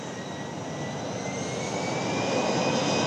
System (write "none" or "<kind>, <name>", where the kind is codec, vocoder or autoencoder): none